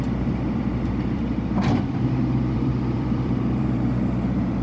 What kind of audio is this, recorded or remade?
remade